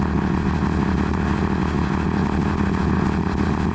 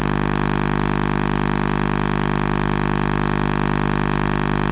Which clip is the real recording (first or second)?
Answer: second